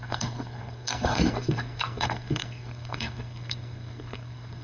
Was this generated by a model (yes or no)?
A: yes